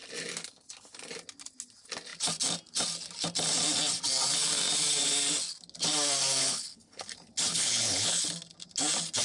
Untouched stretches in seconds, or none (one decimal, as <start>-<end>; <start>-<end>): 0.0-6.4; 7.0-7.5; 8.3-9.2